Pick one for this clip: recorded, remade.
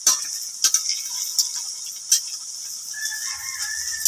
recorded